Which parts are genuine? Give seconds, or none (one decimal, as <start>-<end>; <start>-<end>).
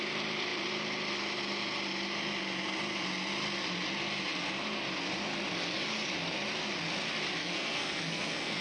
0.0-7.4